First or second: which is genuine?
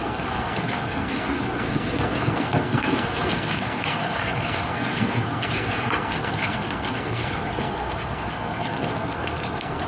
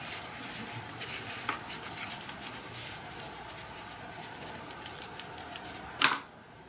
second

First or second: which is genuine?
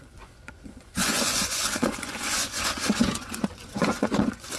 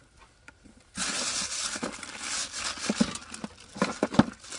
second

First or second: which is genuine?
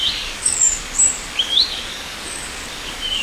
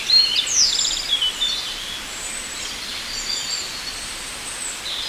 second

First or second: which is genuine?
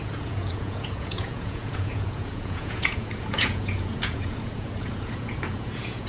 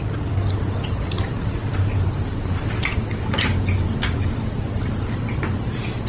second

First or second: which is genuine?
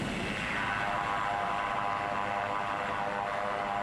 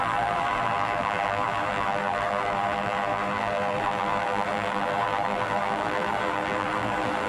first